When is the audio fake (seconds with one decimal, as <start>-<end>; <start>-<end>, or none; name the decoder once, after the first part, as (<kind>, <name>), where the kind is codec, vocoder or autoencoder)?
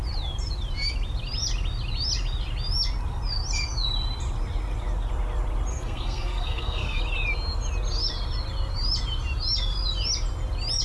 5.7-7.0 (codec, SNAC)